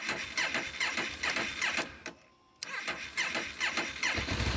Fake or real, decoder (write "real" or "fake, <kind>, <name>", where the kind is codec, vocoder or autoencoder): real